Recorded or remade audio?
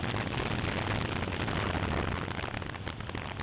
recorded